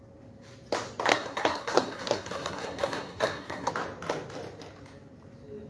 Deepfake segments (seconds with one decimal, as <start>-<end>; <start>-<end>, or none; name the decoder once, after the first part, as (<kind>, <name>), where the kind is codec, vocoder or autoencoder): 1.1-3.7 (codec, SNAC)